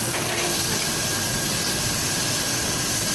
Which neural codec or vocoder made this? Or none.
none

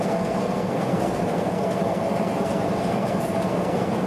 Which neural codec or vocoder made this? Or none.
codec, SNAC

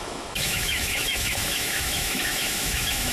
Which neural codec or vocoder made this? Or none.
autoencoder, DAC-VAE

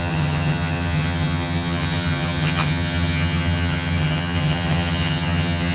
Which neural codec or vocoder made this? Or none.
vocoder, HiFi-GAN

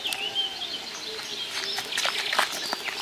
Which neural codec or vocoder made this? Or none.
none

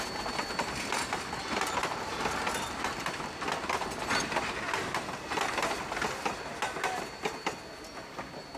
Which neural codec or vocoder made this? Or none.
none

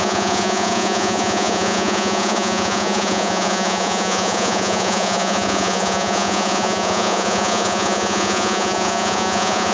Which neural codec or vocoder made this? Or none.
vocoder, Vocos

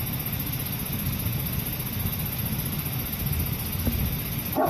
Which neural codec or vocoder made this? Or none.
none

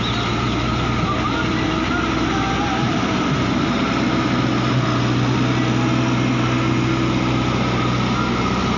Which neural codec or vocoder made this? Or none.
none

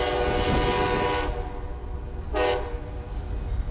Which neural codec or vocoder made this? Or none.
none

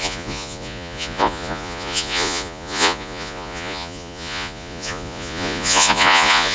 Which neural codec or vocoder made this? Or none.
vocoder, Vocos